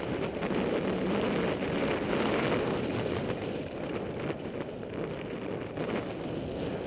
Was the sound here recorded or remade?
recorded